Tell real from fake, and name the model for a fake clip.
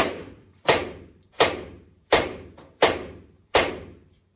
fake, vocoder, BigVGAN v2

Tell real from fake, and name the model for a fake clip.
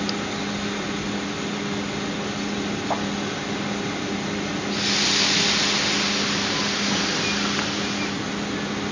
real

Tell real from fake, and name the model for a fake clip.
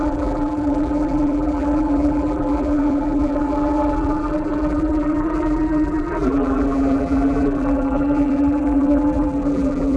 fake, vocoder, BigVGAN v2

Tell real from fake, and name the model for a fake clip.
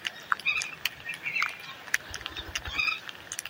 fake, vocoder, BigVGAN v2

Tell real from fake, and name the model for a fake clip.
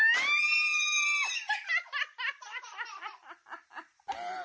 real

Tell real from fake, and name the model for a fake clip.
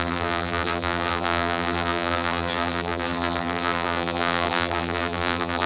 fake, vocoder, BigVGAN v2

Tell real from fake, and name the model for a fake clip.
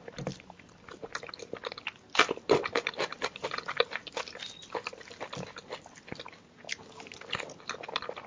real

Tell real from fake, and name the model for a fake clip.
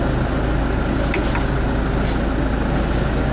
real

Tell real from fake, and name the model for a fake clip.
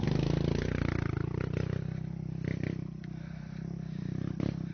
fake, vocoder, BigVGAN v2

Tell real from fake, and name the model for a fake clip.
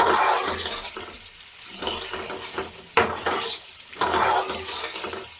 fake, vocoder, BigVGAN v2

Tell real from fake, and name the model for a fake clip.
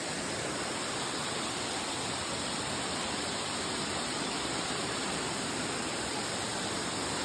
fake, vocoder, BigVGAN v2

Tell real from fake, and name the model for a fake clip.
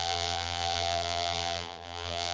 fake, vocoder, BigVGAN v2